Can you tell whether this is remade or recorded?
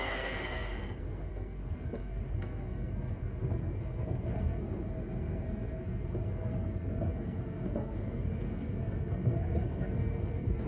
remade